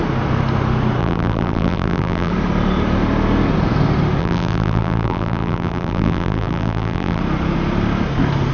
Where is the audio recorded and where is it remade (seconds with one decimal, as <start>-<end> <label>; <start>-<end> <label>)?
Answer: 0.0-1.0 recorded; 1.0-2.3 remade; 2.3-4.2 recorded; 4.2-7.2 remade; 7.2-8.5 recorded